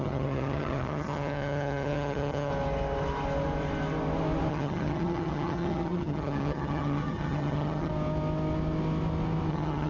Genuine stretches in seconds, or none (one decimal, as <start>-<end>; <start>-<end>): 2.5-4.5; 7.9-9.5